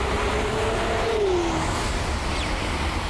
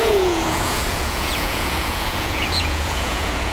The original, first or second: first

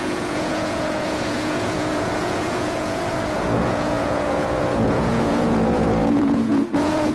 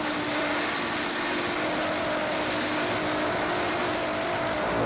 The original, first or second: second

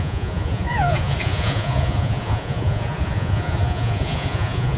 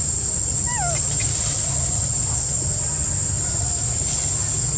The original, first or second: second